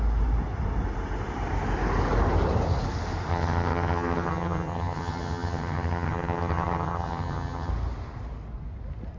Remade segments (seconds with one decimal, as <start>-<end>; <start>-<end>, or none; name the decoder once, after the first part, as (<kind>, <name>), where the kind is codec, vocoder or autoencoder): 3.3-7.7 (vocoder, HiFi-GAN)